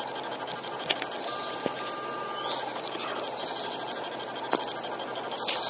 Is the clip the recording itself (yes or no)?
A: yes